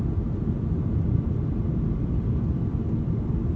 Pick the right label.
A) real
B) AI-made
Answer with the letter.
A